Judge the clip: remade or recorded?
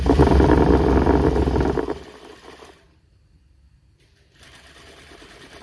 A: recorded